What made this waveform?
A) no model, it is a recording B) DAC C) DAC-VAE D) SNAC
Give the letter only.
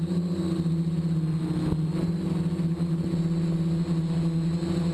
A